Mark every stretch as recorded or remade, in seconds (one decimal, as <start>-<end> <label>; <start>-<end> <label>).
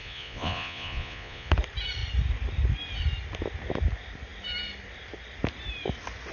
0.0-1.5 remade; 1.5-6.3 recorded